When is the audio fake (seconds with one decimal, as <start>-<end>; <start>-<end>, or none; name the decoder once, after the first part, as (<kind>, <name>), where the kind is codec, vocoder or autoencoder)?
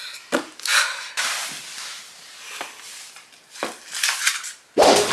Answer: none